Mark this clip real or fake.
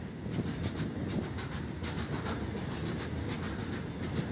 real